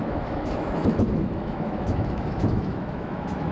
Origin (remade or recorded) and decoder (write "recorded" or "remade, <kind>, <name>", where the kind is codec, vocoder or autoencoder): remade, autoencoder, DAC-VAE